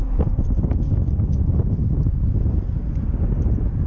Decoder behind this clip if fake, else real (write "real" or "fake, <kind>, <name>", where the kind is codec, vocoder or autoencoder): real